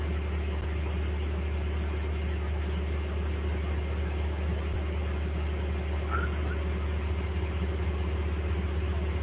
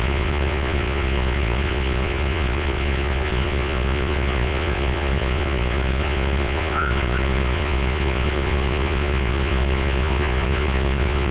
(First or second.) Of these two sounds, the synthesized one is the second